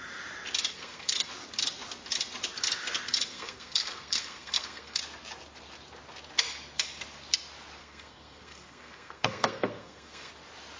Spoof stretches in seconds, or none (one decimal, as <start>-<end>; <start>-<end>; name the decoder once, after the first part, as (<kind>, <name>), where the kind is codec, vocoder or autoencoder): 0.7-1.3 (codec, SNAC); 3.3-5.0; 7.8-10.3